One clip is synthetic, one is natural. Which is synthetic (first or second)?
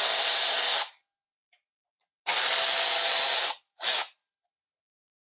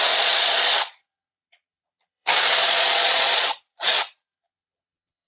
second